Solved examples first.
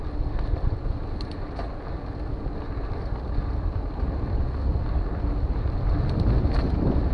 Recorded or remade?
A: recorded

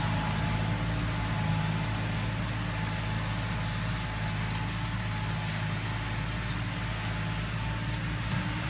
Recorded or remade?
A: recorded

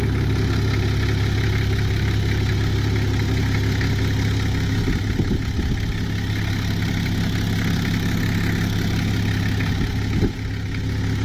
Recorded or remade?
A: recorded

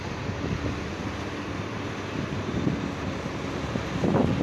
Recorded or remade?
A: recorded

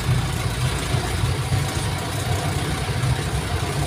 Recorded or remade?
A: recorded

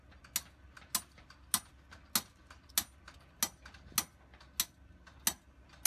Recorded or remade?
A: recorded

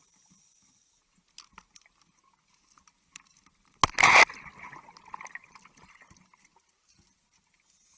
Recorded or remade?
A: recorded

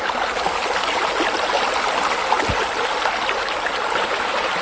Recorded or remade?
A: recorded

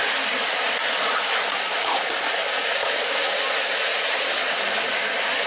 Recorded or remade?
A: recorded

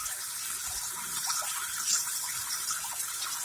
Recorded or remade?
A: remade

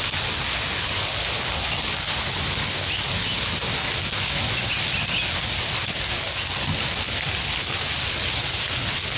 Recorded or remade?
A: recorded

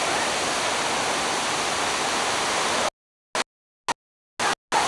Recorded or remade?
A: recorded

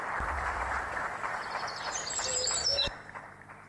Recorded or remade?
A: remade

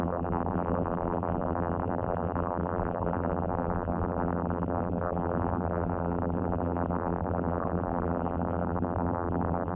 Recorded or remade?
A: remade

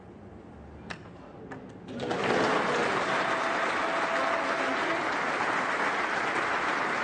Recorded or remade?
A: recorded